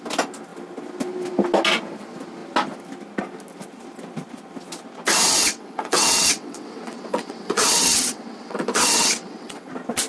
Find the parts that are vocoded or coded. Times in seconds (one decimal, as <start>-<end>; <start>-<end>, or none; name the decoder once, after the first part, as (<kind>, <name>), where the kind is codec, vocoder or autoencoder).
5.4-9.7 (vocoder, WaveNeXt)

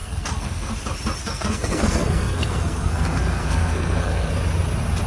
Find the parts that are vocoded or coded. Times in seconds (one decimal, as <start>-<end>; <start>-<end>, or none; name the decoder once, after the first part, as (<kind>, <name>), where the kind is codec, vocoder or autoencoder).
0.0-0.7 (codec, SNAC); 1.2-4.3